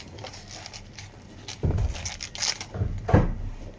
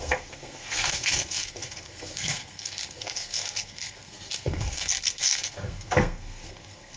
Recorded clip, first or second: first